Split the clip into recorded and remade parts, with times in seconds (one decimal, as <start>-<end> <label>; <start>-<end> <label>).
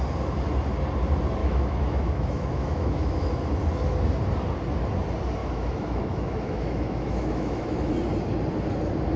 0.0-1.4 recorded; 1.4-3.3 remade; 3.3-5.4 recorded; 5.4-7.9 remade; 7.9-9.2 recorded